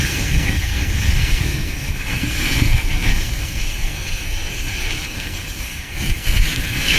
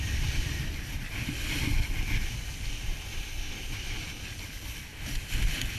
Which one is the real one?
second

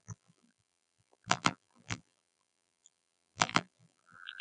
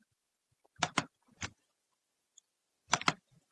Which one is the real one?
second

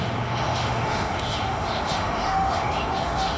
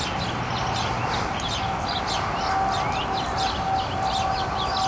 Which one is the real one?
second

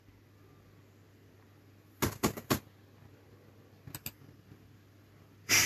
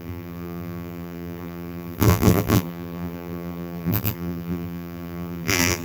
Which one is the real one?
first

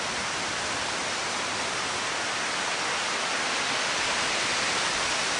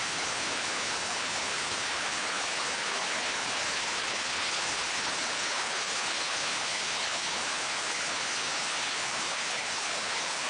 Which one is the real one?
first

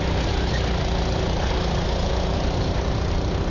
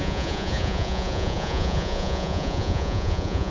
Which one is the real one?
first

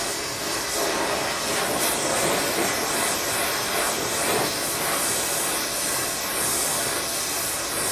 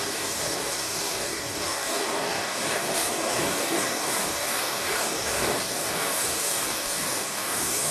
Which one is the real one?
first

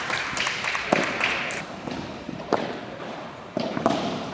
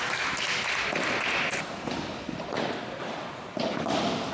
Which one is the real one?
second